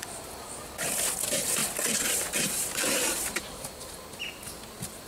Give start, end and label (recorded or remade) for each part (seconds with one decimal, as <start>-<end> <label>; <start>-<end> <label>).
0.0-1.6 recorded; 1.6-3.7 remade; 3.7-5.1 recorded